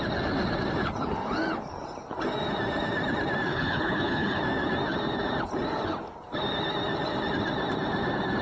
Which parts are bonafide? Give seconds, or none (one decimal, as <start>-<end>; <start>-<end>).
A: 0.0-3.5; 4.4-8.4